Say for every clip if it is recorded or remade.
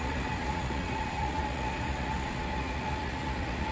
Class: remade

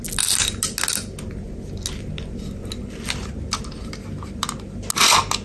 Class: recorded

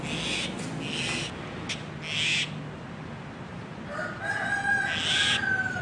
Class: recorded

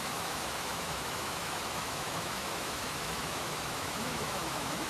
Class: remade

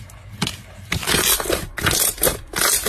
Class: recorded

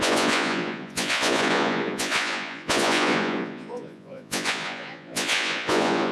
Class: remade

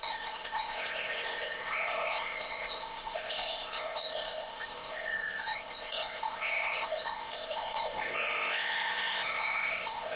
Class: remade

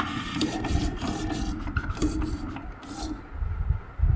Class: recorded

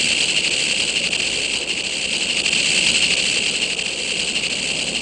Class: recorded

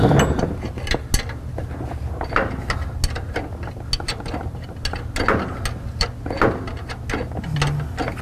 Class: recorded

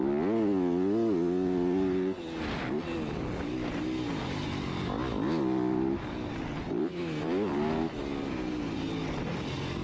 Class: recorded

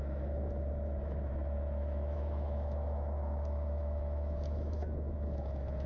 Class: remade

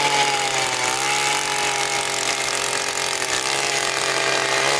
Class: recorded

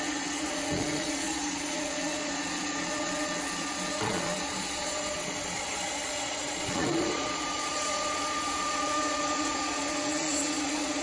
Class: remade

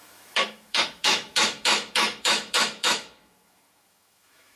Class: remade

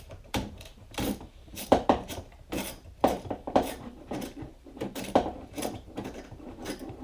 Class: remade